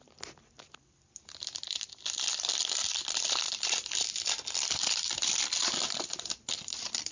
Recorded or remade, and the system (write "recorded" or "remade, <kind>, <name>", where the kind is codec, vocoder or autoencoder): remade, vocoder, BigVGAN v2